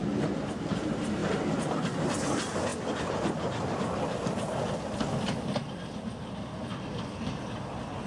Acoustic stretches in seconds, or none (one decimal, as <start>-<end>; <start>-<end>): 0.0-8.1